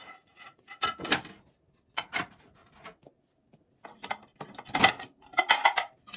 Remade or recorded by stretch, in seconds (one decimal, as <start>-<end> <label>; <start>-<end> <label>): 0.0-1.1 remade; 1.1-1.9 recorded; 1.9-2.6 remade; 2.6-6.2 recorded